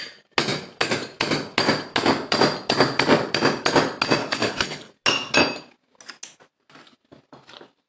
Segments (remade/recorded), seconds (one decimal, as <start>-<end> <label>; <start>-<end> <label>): 0.0-4.2 recorded; 4.2-4.9 remade; 4.9-7.9 recorded